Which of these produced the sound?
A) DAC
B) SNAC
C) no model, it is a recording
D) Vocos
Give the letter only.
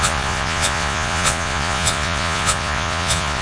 D